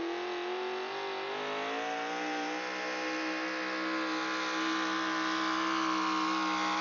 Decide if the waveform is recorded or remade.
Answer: recorded